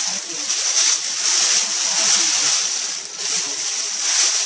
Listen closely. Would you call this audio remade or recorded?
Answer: recorded